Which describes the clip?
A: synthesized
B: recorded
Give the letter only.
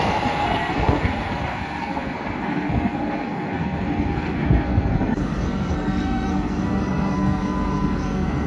A